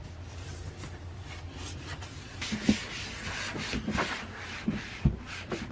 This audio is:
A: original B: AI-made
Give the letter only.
A